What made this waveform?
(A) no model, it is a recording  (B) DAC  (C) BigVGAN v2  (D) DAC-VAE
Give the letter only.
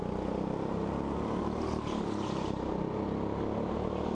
A